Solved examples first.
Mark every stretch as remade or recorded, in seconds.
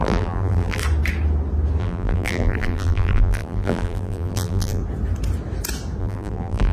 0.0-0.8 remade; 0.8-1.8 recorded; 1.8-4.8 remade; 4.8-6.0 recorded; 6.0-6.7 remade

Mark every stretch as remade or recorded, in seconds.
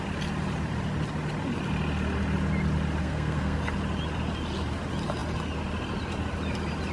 0.0-3.0 recorded; 3.0-3.6 remade; 3.6-6.9 recorded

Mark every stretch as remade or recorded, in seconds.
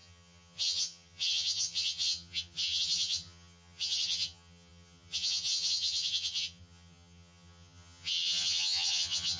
0.0-9.4 remade